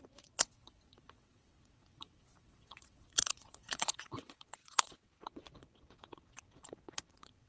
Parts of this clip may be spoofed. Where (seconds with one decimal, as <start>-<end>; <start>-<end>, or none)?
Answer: 0.0-7.5